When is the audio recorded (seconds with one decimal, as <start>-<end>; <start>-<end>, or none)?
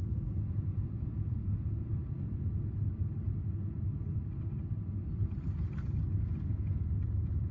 2.0-6.5